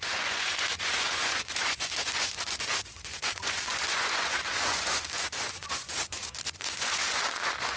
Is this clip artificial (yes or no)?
yes